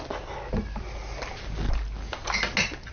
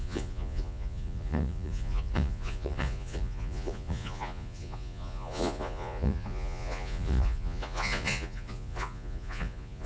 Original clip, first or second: first